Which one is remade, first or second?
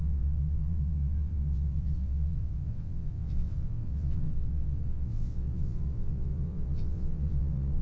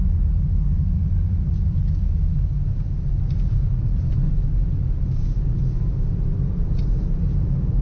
first